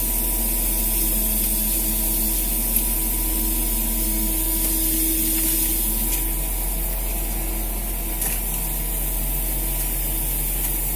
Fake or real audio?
real